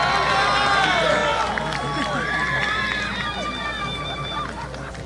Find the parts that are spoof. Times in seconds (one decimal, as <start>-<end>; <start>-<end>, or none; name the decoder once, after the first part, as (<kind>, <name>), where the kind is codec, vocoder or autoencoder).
none